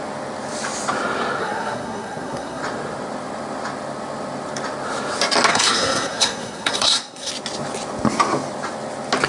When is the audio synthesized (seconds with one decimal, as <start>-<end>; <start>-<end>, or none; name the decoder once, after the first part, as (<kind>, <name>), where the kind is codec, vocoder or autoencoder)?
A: 1.4-2.6 (codec, SNAC); 5.5-7.3